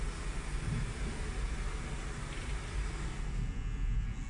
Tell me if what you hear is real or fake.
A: real